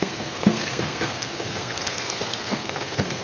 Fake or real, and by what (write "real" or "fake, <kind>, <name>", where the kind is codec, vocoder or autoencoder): fake, codec, SNAC